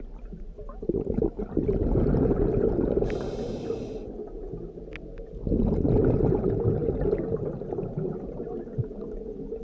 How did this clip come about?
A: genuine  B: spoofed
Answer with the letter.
A